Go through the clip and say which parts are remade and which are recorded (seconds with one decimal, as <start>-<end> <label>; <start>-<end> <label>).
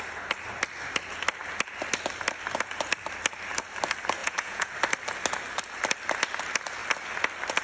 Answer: 0.0-4.2 recorded; 4.2-4.7 remade; 4.7-7.6 recorded